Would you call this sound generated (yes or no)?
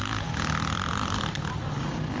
no